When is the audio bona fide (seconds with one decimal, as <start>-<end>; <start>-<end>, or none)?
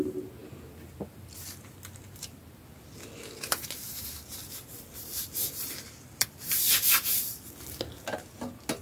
0.0-4.4; 7.2-8.8